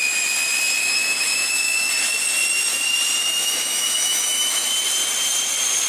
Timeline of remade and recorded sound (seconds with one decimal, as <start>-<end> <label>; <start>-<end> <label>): 0.0-0.8 recorded; 0.8-1.9 remade; 1.9-3.2 recorded; 3.2-4.7 remade; 4.7-5.9 recorded